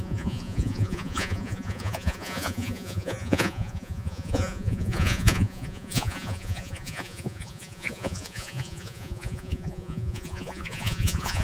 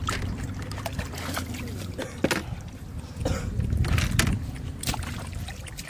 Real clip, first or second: second